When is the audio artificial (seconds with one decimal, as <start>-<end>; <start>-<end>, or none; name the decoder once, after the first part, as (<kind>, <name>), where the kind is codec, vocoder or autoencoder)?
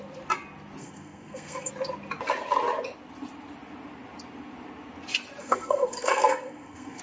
0.8-1.7 (codec, SNAC); 5.4-7.0